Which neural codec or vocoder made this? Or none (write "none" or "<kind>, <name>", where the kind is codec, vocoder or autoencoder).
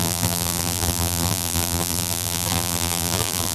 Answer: vocoder, BigVGAN v2